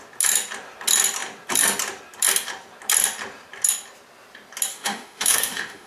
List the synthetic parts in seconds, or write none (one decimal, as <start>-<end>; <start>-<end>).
4.7-5.9